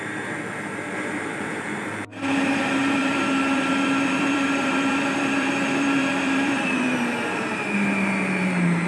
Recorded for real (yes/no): no